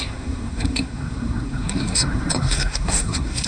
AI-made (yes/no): yes